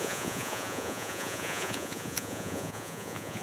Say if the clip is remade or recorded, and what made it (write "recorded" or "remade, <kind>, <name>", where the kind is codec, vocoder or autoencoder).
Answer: remade, vocoder, Vocos